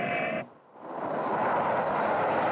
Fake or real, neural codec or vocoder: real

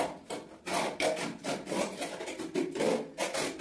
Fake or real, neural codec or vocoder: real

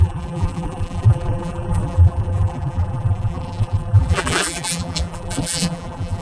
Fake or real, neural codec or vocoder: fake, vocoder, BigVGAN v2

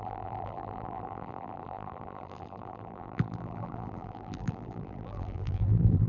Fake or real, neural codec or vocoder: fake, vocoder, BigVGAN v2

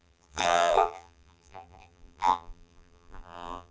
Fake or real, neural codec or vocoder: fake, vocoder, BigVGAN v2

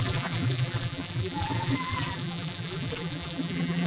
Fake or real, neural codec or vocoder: fake, vocoder, BigVGAN v2